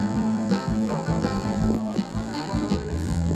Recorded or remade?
remade